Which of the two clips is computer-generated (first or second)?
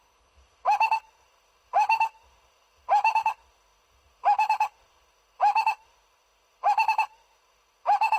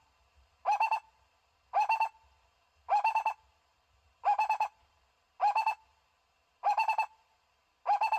first